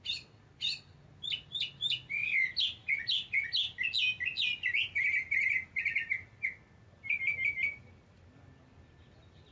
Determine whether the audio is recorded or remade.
recorded